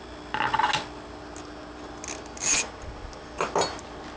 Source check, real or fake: real